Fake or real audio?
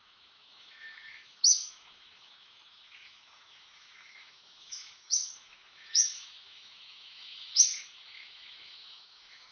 fake